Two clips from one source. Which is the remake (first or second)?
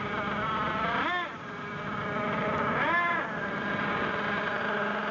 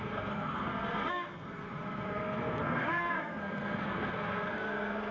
second